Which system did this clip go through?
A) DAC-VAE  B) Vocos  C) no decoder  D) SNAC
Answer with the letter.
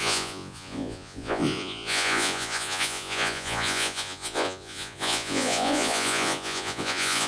B